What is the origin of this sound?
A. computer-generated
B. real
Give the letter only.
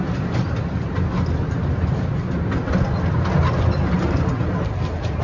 B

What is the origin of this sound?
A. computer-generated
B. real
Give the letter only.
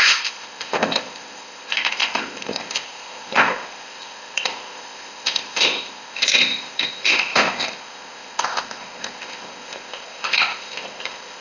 A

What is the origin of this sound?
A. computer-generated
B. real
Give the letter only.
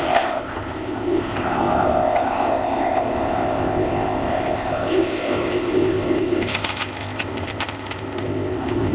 A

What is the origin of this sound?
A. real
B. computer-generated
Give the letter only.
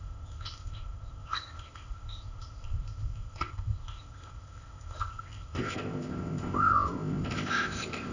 B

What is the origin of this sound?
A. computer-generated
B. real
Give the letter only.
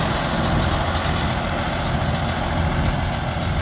B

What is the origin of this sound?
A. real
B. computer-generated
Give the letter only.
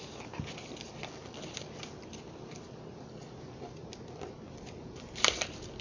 A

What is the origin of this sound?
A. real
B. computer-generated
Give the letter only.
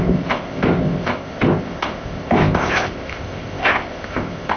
B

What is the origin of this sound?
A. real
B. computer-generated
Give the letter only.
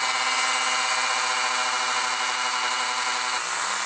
A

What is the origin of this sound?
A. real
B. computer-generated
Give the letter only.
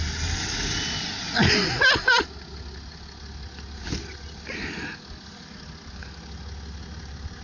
A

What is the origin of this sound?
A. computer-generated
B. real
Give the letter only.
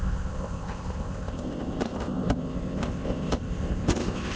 A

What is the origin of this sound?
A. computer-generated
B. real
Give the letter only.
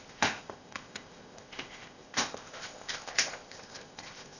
A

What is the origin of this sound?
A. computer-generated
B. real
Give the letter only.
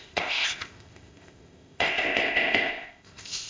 A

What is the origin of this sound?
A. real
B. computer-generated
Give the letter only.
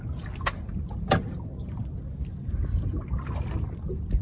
A